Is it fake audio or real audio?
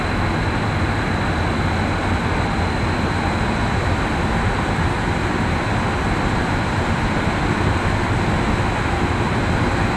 real